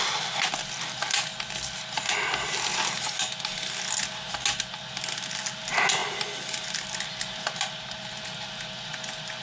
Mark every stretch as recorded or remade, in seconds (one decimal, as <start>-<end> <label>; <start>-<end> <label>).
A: 0.0-9.4 recorded